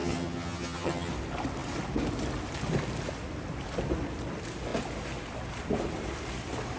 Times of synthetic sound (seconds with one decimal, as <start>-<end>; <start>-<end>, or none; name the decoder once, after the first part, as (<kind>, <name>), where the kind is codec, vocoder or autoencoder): 0.0-1.1 (vocoder, HiFi-GAN)